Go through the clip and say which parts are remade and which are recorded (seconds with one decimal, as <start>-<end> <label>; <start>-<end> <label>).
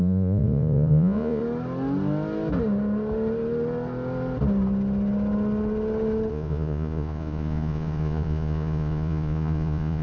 0.0-1.4 remade; 1.4-6.3 recorded; 6.3-10.0 remade